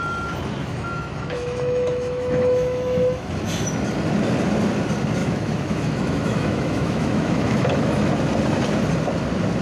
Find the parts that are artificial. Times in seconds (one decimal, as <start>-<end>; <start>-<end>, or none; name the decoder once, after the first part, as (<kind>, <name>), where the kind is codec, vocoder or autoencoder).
0.6-3.3 (autoencoder, DAC-VAE); 5.2-8.1